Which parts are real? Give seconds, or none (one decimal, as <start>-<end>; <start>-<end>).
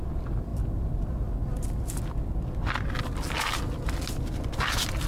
0.0-5.1